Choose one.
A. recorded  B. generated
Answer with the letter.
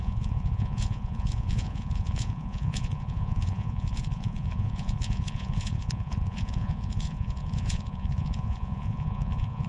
B